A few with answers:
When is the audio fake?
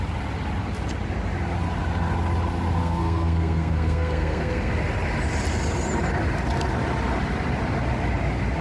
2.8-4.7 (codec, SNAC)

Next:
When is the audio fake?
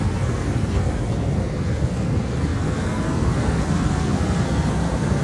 0.0-5.2 (codec, SNAC)